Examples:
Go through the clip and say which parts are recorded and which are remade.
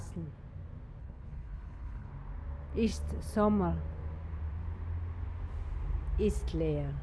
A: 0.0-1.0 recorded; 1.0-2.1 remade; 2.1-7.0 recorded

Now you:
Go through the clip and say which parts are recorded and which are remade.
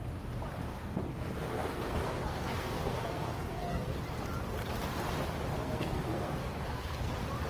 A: 0.0-0.7 recorded; 0.7-4.0 remade; 4.0-5.6 recorded; 5.6-7.1 remade; 7.1-7.5 recorded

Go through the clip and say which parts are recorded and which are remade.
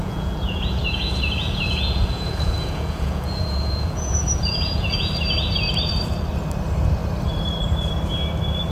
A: 0.0-5.1 remade; 5.1-8.7 recorded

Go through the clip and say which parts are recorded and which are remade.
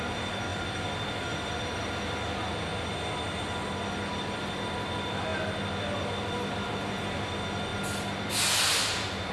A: 0.0-9.3 recorded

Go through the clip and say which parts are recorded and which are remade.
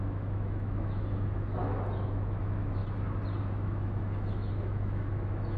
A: 0.0-2.8 remade; 2.8-3.4 recorded; 3.4-5.6 remade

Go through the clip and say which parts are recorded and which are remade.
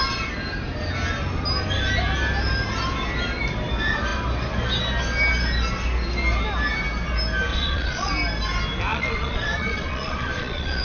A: 0.0-7.5 recorded; 7.5-8.1 remade; 8.1-8.9 recorded; 8.9-10.8 remade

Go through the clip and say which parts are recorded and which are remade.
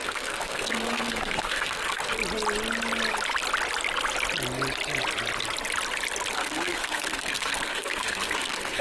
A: 0.0-2.2 remade; 2.2-6.3 recorded; 6.3-8.8 remade